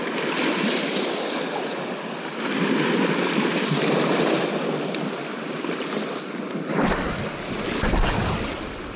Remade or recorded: recorded